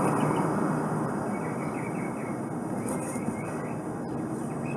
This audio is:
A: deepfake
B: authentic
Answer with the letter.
B